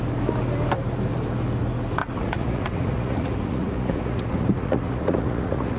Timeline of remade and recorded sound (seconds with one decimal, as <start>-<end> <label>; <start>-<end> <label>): 0.0-2.0 recorded; 2.0-5.8 remade

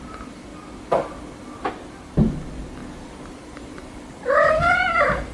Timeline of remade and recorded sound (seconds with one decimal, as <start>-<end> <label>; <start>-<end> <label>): 0.0-2.8 recorded; 2.8-4.5 remade; 4.5-5.3 recorded

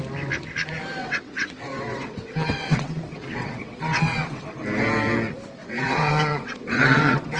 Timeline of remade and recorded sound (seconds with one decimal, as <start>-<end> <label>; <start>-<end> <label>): 0.0-1.0 recorded; 1.0-4.4 remade; 4.4-5.6 recorded; 5.6-7.4 remade

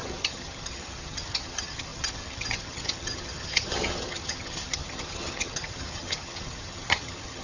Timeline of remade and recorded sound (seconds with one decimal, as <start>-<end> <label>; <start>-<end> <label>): 0.0-7.4 remade